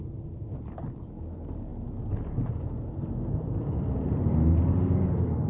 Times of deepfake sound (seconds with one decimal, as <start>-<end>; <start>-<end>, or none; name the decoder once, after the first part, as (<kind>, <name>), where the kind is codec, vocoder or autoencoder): none